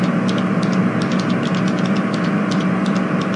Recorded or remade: recorded